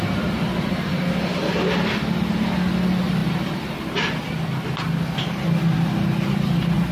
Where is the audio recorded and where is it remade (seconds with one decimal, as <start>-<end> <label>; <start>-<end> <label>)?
0.0-6.9 recorded